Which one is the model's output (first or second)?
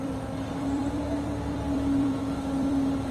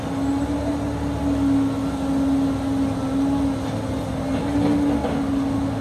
first